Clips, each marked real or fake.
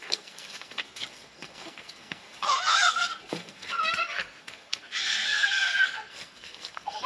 fake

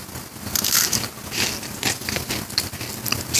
real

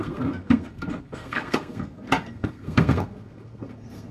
fake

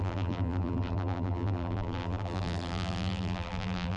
fake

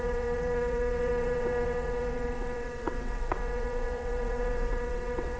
fake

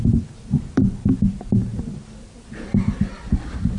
real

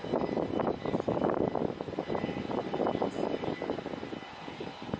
real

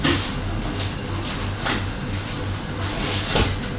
real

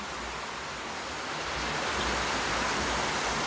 real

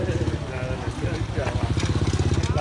real